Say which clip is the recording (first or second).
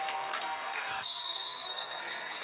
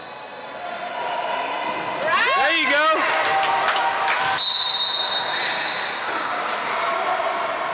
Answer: second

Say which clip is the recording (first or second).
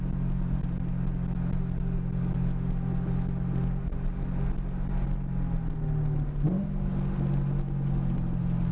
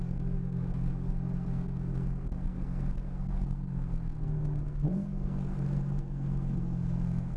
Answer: first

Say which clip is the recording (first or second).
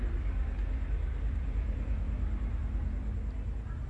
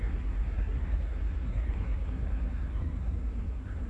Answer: first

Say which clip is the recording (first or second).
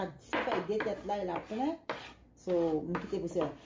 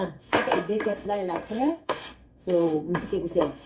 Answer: first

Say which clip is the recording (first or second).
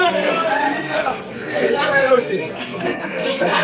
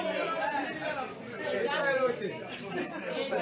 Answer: second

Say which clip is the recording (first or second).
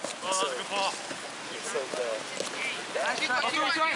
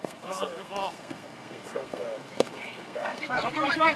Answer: first